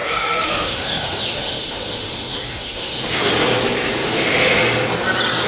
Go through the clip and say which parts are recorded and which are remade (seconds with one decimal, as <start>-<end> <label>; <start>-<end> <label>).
0.0-3.3 remade; 3.3-4.0 recorded; 4.0-4.6 remade; 4.6-5.5 recorded